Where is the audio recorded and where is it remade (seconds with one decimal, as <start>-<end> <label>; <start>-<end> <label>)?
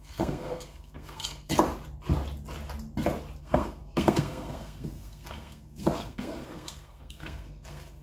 0.0-1.5 remade; 1.5-3.4 recorded; 3.4-8.0 remade